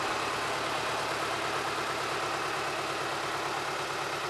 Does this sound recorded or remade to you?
recorded